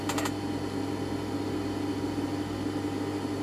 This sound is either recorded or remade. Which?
recorded